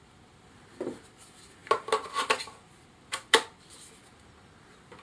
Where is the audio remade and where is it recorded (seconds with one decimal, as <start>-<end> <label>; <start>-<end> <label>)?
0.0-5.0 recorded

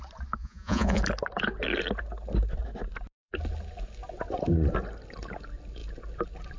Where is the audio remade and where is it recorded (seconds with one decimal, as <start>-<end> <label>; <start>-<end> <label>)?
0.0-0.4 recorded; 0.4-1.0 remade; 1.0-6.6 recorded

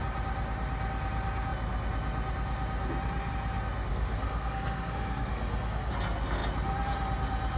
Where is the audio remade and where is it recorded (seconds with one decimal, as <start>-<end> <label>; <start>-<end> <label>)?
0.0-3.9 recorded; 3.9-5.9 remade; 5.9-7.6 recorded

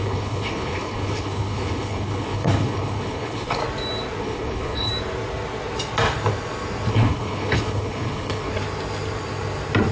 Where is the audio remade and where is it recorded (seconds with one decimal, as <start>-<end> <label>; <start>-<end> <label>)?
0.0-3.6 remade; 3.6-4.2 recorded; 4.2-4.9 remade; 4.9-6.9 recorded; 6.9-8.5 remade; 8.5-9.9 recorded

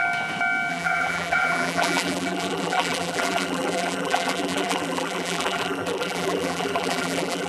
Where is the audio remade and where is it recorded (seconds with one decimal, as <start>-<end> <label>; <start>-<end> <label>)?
0.0-0.7 recorded; 0.7-7.5 remade